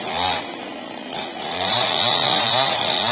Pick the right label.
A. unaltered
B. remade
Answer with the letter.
B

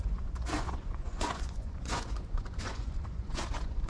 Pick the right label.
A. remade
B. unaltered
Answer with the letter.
A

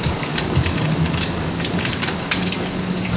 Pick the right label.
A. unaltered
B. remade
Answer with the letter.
B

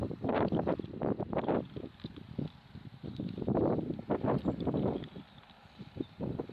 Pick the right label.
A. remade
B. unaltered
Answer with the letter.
B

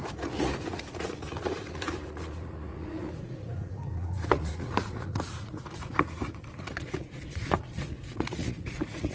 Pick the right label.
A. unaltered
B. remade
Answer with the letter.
B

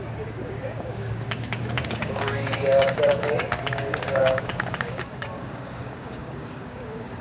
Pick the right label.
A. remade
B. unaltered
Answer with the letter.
A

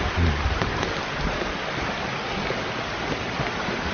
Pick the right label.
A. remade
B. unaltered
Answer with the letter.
B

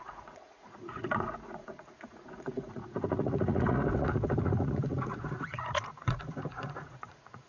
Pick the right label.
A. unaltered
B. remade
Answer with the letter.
B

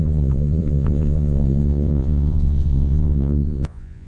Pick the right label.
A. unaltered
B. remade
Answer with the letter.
B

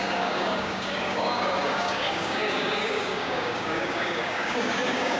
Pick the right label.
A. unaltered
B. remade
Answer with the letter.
B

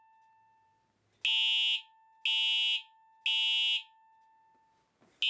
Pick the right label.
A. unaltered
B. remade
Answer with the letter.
A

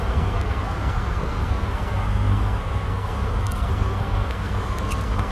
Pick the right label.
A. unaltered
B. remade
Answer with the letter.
B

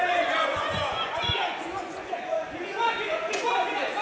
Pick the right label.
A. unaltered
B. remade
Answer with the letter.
B